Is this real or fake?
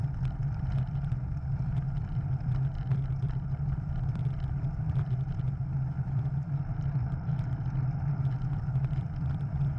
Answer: fake